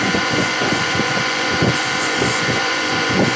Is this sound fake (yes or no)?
yes